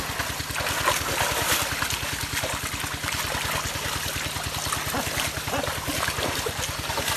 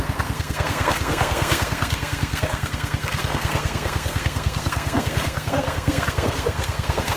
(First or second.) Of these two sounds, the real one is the first